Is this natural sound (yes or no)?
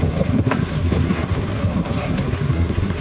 no